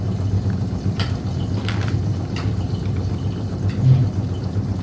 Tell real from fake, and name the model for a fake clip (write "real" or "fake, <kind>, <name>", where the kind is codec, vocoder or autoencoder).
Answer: real